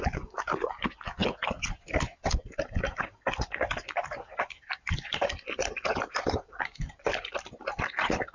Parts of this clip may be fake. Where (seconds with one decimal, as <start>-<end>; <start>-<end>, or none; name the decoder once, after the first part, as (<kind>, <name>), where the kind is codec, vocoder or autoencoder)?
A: none